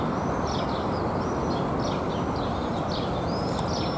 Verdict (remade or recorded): recorded